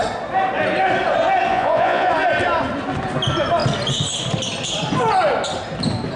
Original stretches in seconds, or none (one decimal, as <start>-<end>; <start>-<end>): 0.0-1.5; 2.1-6.2